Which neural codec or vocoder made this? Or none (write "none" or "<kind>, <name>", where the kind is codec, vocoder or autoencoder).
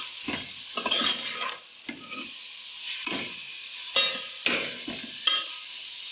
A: none